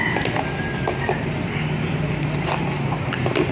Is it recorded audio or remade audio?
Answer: recorded